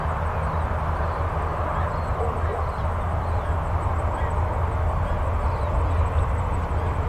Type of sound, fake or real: real